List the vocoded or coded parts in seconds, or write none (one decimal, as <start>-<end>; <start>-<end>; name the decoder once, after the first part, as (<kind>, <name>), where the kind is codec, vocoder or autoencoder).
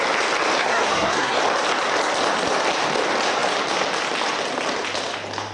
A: 0.6-1.4 (codec, SNAC)